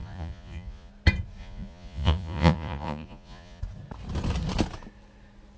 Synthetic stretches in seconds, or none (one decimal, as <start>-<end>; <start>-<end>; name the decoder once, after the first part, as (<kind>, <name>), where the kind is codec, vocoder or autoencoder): 0.0-0.9 (vocoder, Vocos); 1.4-3.6